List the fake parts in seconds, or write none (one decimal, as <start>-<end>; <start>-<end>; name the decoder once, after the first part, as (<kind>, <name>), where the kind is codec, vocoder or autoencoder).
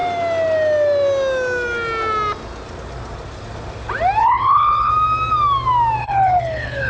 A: 4.2-4.9 (codec, HILCodec); 6.0-6.9